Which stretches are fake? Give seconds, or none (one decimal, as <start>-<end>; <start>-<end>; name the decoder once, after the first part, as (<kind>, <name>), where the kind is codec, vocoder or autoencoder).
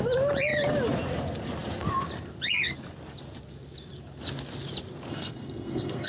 5.1-6.1 (codec, SNAC)